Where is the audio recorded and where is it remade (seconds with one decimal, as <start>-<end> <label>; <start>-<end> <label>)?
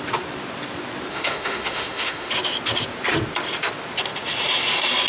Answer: 0.0-1.1 recorded; 1.1-2.3 remade; 2.3-5.1 recorded